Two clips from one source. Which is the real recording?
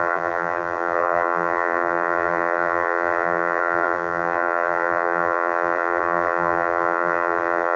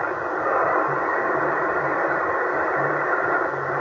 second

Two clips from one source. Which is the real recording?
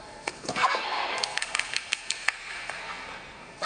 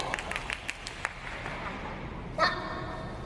second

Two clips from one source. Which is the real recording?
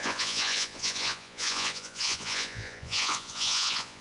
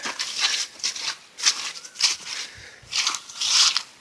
second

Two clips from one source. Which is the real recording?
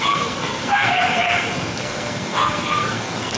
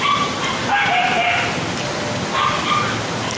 second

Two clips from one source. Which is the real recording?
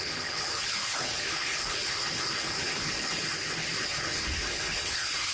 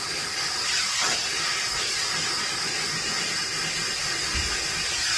second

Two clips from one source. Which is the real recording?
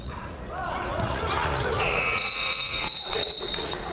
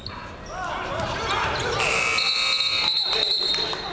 second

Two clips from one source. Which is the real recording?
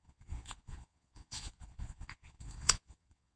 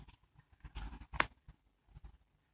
second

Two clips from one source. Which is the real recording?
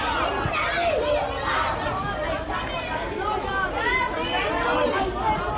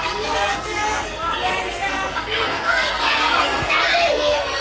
first